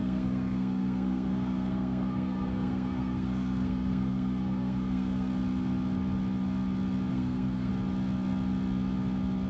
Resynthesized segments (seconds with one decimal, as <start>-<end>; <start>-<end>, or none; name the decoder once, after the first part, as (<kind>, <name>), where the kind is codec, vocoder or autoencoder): 0.0-5.3 (codec, SNAC); 7.1-7.7